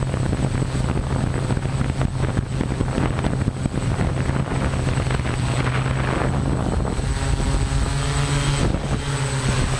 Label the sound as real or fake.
real